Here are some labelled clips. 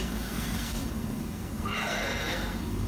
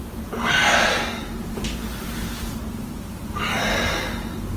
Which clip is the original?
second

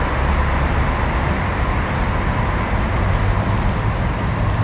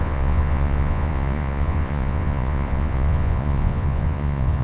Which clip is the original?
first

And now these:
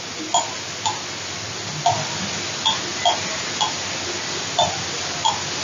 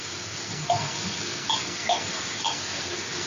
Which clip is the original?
first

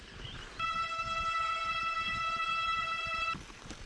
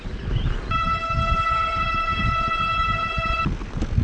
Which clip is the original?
second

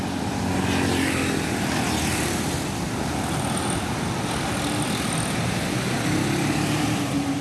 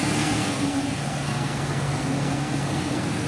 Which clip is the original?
first